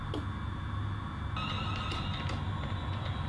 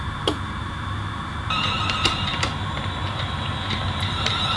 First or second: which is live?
first